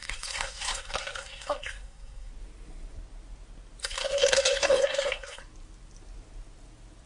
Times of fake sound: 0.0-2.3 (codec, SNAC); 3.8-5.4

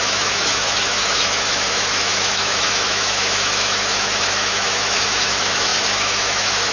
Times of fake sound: 0.0-6.7 (autoencoder, DAC-VAE)

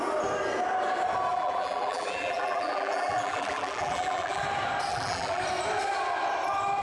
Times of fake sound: 1.3-4.4 (vocoder, BigVGAN v2); 4.9-5.4

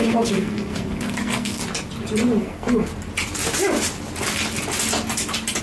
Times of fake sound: 0.0-1.6 (codec, SNAC); 2.4-2.9

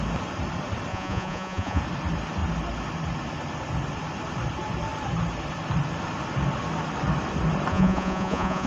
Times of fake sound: 0.9-1.8 (vocoder, Vocos); 7.7-8.7

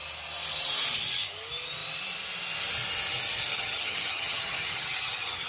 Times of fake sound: 3.5-5.5 (vocoder, HiFi-GAN)

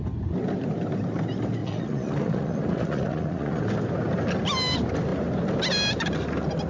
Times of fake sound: 1.6-3.6 (vocoder, Vocos)